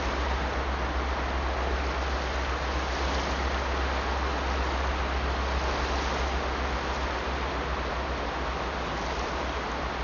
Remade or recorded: recorded